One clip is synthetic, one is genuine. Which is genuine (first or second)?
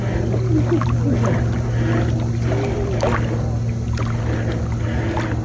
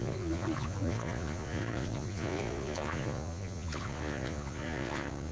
first